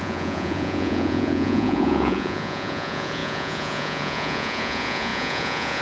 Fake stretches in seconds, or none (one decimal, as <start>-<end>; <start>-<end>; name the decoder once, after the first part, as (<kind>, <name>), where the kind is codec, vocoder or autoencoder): 0.0-5.8 (vocoder, Vocos)